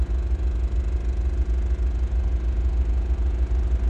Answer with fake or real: real